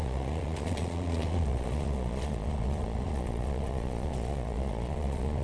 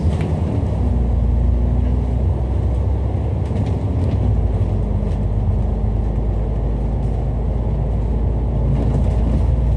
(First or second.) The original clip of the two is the second